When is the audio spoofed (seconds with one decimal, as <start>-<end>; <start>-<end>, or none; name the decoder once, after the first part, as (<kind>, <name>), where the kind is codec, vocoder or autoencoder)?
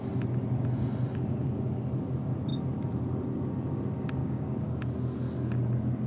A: 4.2-4.8 (codec, DAC)